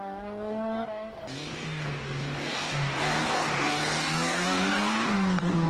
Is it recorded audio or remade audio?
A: remade